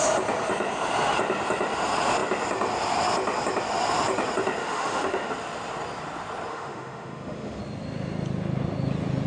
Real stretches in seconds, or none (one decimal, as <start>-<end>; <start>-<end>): 0.0-4.6; 5.3-6.5; 7.6-9.3

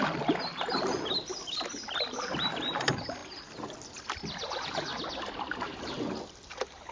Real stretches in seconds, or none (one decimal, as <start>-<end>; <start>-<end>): 0.0-6.9

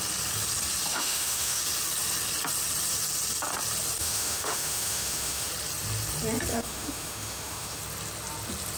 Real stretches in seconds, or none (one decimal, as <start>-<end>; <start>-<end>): 0.0-0.9; 1.6-4.0; 5.5-6.5; 7.8-8.8

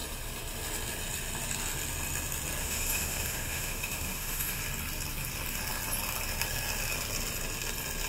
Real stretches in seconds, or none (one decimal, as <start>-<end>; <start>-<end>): 0.0-2.6; 4.6-8.1

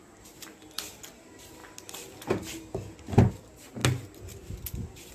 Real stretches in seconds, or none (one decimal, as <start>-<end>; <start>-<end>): 0.0-5.1